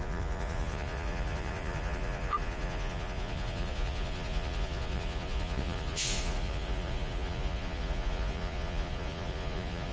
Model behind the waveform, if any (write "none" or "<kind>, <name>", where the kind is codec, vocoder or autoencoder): vocoder, Vocos